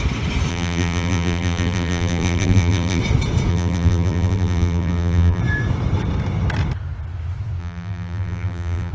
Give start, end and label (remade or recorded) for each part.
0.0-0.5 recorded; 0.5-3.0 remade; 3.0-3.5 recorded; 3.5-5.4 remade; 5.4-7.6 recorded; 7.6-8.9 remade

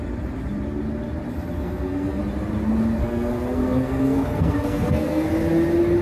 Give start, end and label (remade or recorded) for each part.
0.0-1.6 recorded; 1.6-2.2 remade; 2.2-3.0 recorded; 3.0-5.3 remade; 5.3-6.0 recorded